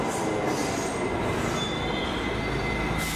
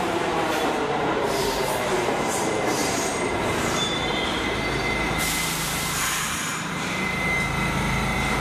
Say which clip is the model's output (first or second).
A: second